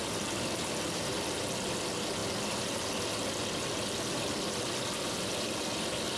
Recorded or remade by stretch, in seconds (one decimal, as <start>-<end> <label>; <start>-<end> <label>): 0.0-6.2 recorded